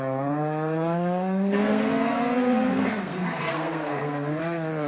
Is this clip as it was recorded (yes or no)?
no